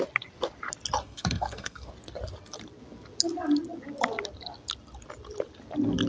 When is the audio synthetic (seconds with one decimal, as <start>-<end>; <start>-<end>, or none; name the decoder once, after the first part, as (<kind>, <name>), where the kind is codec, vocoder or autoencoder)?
1.0-1.9 (codec, SNAC)